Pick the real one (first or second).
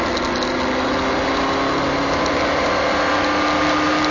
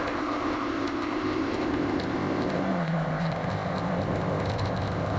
first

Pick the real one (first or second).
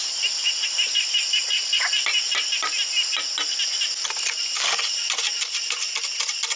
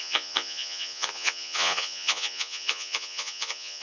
first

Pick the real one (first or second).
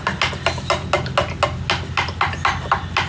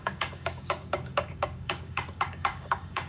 first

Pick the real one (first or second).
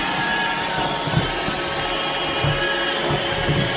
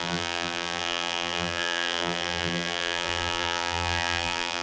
first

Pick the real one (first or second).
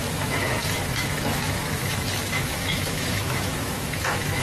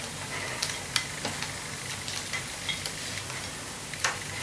second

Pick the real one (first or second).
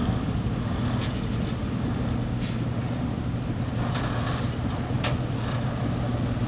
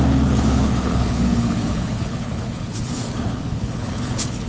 first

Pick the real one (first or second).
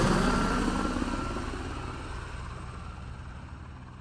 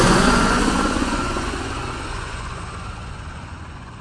first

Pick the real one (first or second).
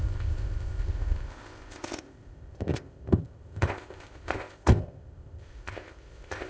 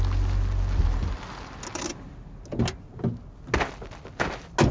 second